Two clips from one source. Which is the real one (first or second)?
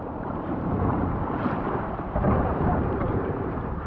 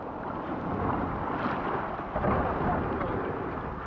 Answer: second